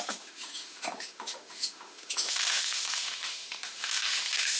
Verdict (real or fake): fake